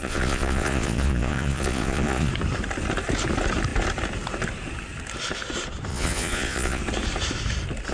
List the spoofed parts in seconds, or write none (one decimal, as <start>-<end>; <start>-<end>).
0.0-2.3; 5.9-6.8

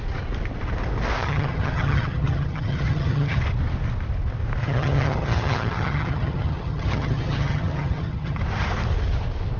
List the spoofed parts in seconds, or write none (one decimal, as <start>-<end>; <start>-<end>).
1.2-3.4; 4.6-8.4

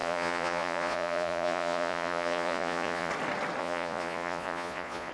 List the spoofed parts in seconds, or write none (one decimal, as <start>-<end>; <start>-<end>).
0.0-3.1; 3.6-5.1

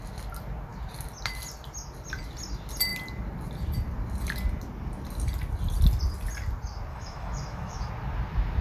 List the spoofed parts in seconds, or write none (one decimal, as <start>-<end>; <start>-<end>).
6.9-7.9

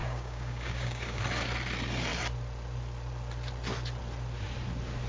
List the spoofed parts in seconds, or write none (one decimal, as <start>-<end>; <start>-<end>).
0.0-1.2